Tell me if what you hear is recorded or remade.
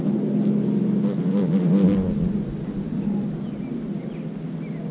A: recorded